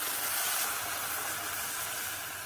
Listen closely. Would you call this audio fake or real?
real